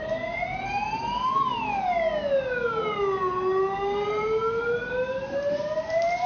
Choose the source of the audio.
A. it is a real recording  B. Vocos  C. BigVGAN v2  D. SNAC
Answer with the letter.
A